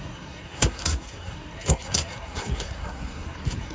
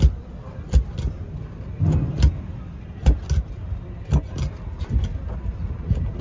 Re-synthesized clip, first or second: first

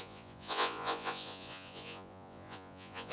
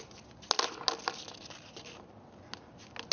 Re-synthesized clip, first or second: first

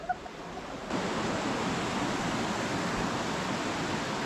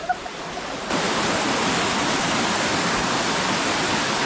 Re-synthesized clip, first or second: second